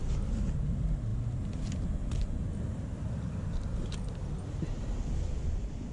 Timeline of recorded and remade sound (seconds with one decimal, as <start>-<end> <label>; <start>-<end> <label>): 0.0-5.9 recorded